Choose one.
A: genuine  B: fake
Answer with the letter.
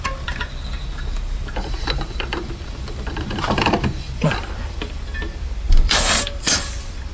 B